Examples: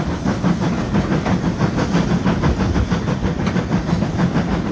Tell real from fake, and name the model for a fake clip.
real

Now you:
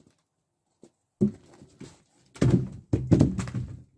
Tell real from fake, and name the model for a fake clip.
real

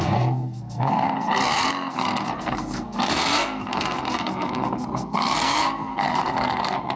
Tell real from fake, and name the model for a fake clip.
fake, codec, SNAC